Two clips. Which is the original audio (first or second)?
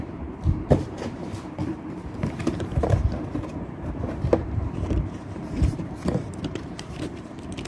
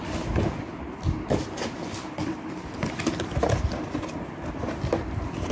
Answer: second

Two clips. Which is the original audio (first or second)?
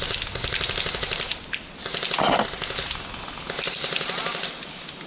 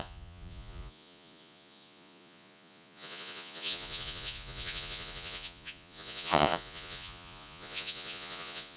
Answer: first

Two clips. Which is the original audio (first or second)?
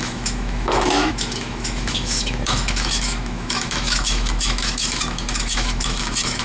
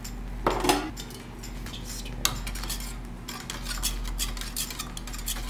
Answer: second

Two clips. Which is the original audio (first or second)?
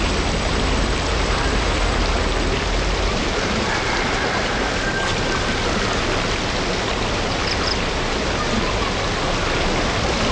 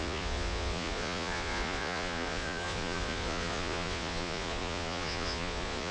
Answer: first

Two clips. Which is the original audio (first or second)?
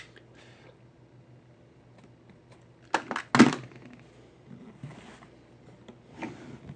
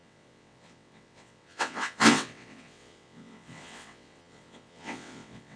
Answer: first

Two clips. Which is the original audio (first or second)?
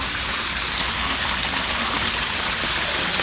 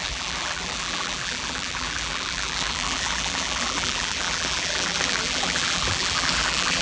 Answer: first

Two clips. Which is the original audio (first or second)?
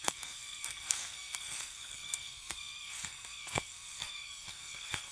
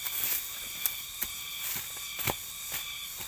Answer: second